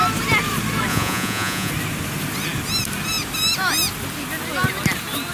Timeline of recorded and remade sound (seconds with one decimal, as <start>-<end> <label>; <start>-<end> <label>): 0.0-0.9 recorded; 0.9-1.7 remade; 1.7-5.3 recorded